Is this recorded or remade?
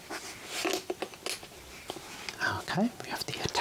recorded